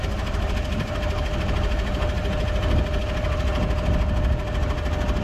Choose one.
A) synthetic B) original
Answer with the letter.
B